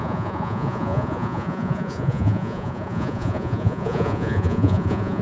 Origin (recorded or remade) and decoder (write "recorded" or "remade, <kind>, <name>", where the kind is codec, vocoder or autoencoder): remade, vocoder, Vocos